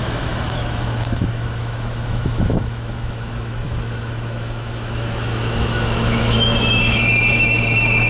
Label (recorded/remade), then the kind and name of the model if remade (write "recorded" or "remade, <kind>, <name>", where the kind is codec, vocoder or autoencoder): remade, autoencoder, DAC-VAE